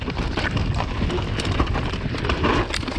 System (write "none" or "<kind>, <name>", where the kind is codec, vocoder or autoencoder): none